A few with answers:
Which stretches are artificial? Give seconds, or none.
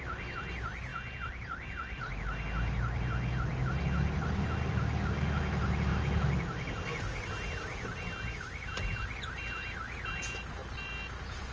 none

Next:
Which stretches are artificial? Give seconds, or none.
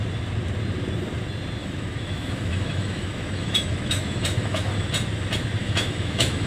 1.6-4.9 (autoencoder, DAC-VAE); 5.6-6.5